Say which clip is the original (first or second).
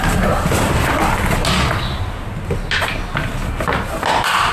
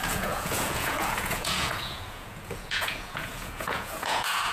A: first